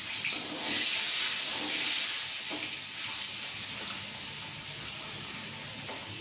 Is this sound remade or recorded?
recorded